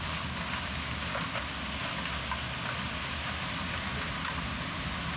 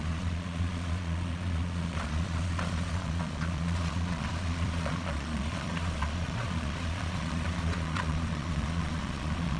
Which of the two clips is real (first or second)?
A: first